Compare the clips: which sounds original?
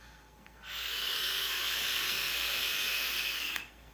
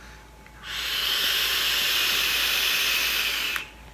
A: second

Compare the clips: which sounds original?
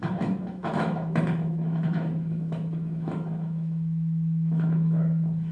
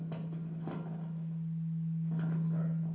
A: second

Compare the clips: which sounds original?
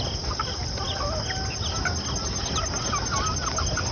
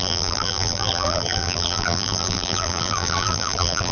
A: first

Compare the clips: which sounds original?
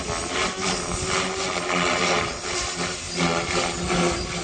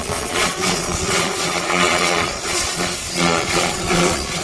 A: first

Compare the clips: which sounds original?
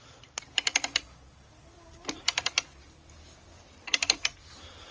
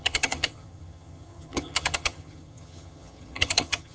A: first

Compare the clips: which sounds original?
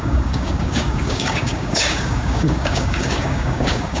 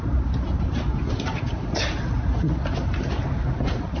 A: second